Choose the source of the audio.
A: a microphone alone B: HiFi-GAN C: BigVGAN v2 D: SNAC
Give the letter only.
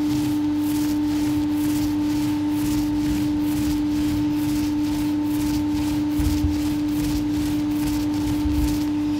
A